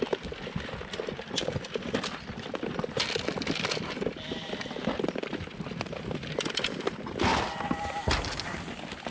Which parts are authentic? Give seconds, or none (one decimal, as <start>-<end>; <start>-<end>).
0.0-9.1